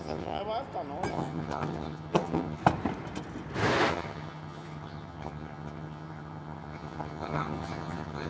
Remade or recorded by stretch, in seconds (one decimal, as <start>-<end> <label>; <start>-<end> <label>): 0.0-0.4 remade; 0.4-1.1 recorded; 1.1-2.6 remade; 2.6-3.9 recorded; 3.9-8.3 remade